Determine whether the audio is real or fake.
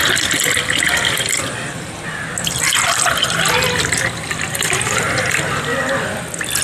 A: real